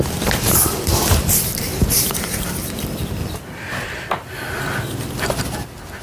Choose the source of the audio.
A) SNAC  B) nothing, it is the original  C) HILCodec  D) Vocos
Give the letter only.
B